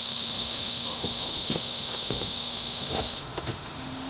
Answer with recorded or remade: remade